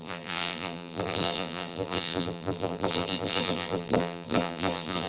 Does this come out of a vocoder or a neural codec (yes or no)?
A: yes